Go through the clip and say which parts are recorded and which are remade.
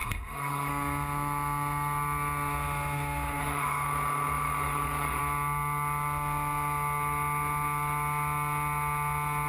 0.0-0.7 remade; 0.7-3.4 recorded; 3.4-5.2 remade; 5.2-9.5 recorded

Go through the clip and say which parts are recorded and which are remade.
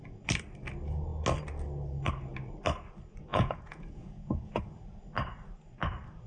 0.0-3.3 recorded; 3.3-4.6 remade; 4.6-6.3 recorded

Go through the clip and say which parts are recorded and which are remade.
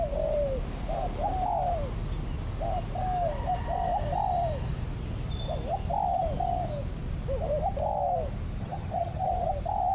0.0-8.6 recorded; 8.6-9.3 remade; 9.3-9.9 recorded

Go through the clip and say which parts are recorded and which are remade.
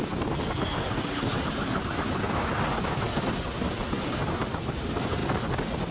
0.0-5.9 recorded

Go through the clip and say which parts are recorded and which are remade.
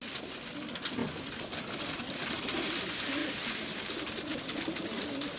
0.0-1.0 recorded; 1.0-2.6 remade; 2.6-3.2 recorded; 3.2-4.3 remade; 4.3-5.4 recorded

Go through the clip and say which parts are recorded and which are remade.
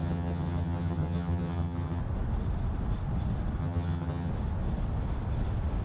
0.0-2.0 remade; 2.0-3.6 recorded; 3.6-4.3 remade; 4.3-5.8 recorded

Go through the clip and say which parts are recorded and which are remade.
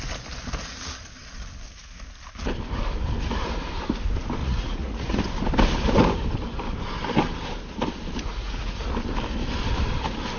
0.0-4.4 recorded; 4.4-5.2 remade; 5.2-8.3 recorded; 8.3-8.8 remade; 8.8-10.4 recorded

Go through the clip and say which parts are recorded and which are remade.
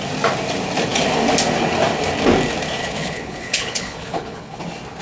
0.0-2.8 recorded; 2.8-4.6 remade; 4.6-5.0 recorded